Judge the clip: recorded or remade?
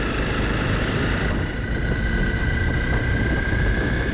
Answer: recorded